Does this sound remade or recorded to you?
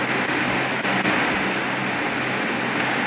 recorded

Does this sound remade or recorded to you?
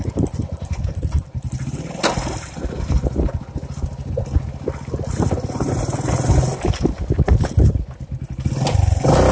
recorded